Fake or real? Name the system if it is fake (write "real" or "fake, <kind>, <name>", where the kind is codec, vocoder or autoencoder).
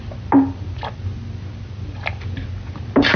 real